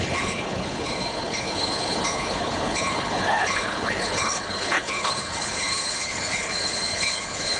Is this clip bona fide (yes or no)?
no